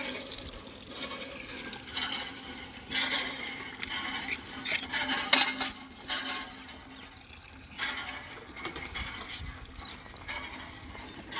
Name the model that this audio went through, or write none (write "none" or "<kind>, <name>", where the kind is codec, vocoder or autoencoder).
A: none